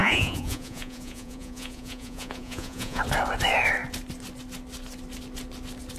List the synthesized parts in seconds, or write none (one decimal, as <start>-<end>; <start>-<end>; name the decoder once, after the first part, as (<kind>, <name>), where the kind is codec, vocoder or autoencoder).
0.0-3.0 (vocoder, Vocos)